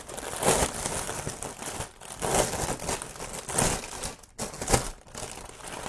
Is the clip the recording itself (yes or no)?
yes